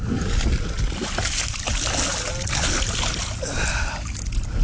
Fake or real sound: real